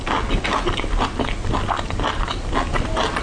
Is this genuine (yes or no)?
yes